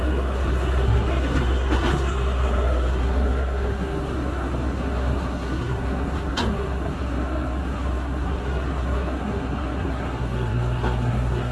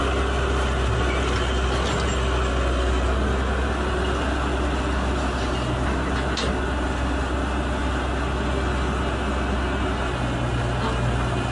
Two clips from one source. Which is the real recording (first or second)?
second